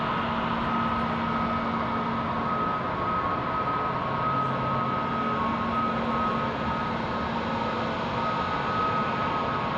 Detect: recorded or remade recorded